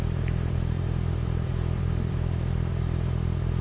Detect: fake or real fake